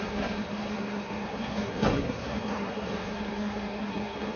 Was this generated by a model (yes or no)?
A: yes